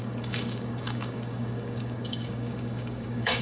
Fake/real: fake